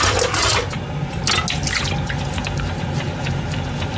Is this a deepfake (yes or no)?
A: no